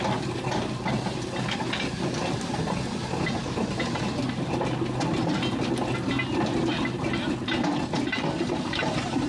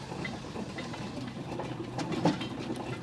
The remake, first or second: second